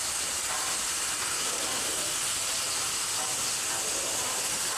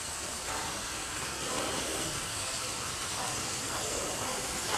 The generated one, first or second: second